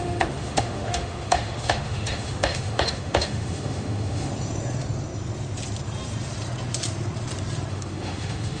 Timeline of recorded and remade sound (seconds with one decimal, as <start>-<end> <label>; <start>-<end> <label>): 0.0-4.3 remade; 4.3-7.7 recorded; 7.7-8.6 remade